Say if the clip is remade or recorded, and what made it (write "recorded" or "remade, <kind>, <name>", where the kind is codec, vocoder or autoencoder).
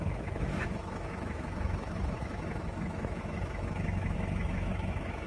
remade, autoencoder, DAC-VAE